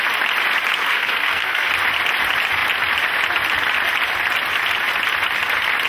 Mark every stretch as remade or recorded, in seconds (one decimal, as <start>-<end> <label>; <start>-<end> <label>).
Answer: 0.0-0.8 recorded; 0.8-1.7 remade; 1.7-5.9 recorded